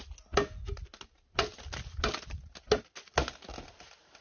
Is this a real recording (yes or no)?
yes